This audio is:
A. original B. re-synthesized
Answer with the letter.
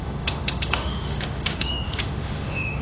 B